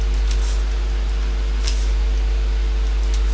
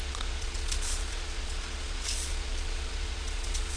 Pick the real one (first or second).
first